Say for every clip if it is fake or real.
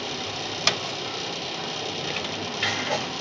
real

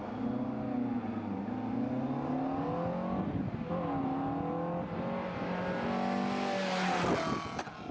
real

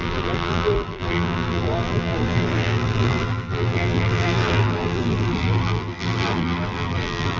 fake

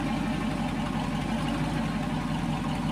real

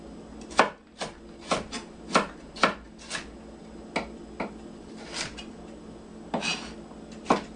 real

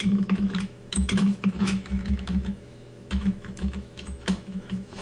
fake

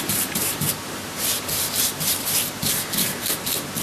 fake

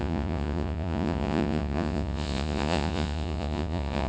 fake